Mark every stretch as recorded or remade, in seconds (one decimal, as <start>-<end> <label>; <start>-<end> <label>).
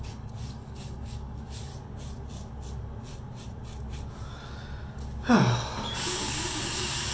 0.0-1.7 remade; 1.7-6.0 recorded; 6.0-7.1 remade